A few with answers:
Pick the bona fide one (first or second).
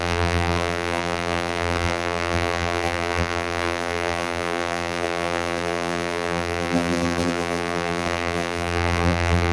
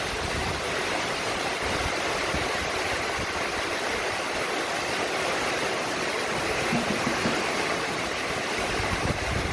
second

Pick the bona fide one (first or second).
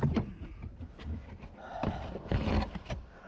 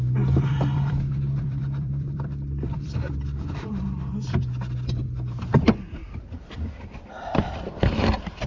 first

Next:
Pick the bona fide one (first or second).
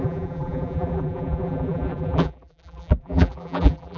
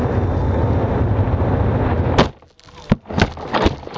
second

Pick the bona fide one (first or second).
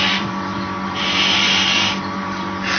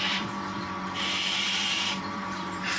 first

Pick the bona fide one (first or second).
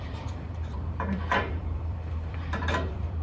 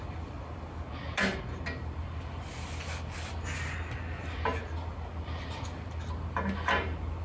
second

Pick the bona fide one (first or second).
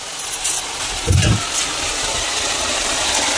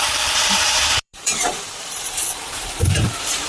first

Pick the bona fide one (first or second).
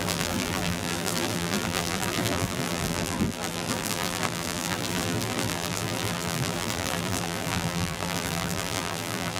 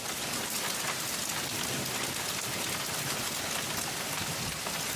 second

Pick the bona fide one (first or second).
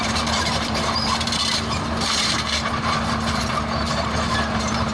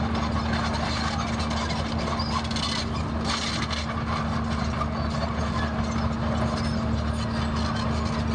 second